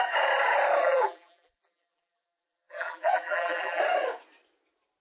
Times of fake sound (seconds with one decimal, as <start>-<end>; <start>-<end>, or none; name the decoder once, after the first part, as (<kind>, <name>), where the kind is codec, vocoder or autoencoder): 0.8-3.8 (vocoder, BigVGAN v2)